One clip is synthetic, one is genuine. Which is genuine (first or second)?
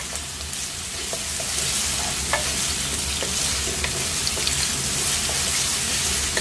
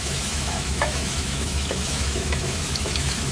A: first